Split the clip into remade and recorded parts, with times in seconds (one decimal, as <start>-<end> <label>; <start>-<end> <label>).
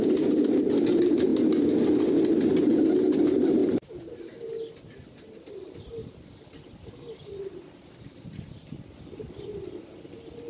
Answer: 0.0-10.5 recorded